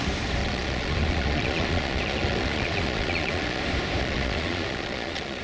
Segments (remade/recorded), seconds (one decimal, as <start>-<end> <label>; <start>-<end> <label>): 0.0-0.4 recorded; 0.4-3.6 remade; 3.6-4.0 recorded; 4.0-5.4 remade